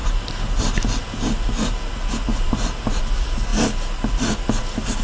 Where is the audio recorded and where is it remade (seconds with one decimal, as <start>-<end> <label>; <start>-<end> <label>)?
0.0-0.6 remade; 0.6-2.3 recorded; 2.3-3.0 remade; 3.0-5.0 recorded